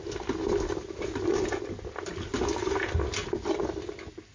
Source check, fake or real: real